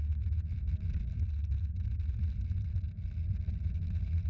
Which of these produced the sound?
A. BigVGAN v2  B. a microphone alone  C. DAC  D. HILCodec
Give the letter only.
B